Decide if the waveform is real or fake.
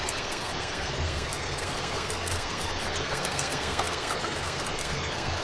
fake